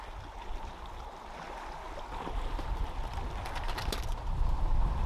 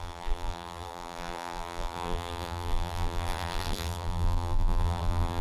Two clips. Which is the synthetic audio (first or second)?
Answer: second